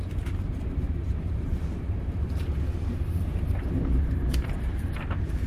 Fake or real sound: fake